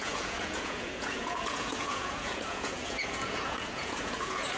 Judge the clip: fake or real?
fake